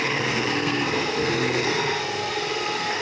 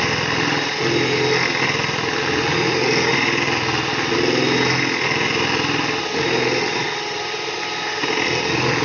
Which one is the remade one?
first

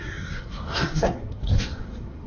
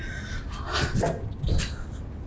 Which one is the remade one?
first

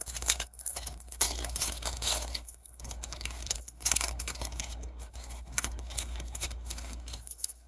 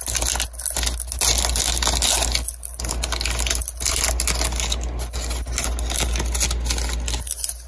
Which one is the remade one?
first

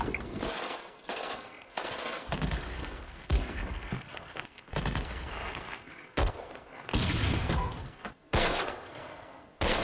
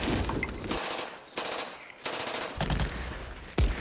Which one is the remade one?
first